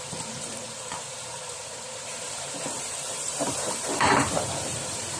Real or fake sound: fake